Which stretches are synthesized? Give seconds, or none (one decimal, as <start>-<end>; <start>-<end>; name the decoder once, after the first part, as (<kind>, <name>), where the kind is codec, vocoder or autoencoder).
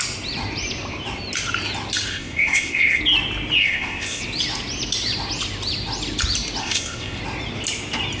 2.1-3.0 (codec, ZipCodec); 3.6-4.2; 6.6-7.2